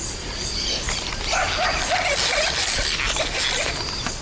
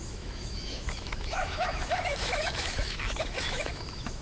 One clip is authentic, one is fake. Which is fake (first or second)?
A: second